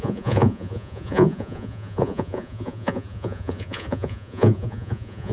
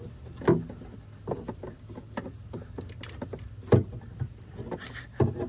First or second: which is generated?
first